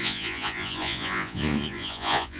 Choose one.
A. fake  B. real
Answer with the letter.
A